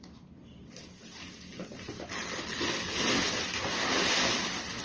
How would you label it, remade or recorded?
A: recorded